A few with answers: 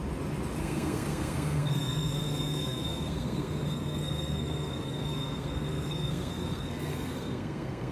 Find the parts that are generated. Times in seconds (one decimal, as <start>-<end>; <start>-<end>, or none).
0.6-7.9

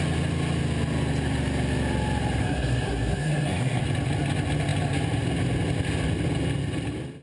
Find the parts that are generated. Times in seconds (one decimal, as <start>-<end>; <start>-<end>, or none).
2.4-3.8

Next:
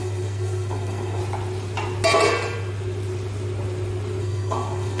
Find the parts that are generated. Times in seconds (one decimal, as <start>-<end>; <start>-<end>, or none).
0.0-1.2; 4.2-5.0

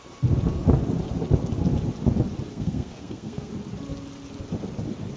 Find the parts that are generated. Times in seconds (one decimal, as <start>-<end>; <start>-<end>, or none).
2.5-3.5

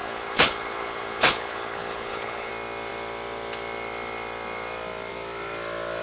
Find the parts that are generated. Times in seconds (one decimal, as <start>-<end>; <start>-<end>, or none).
0.0-2.5

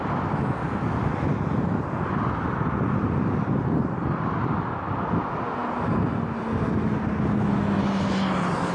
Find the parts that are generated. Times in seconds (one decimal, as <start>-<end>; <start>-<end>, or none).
none

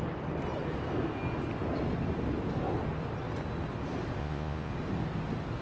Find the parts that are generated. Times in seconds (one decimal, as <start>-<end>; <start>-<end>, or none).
4.2-4.7